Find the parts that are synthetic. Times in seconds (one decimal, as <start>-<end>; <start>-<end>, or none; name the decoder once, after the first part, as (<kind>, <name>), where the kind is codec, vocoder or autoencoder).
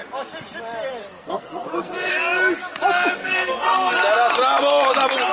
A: 1.1-2.1 (codec, SNAC); 3.2-3.9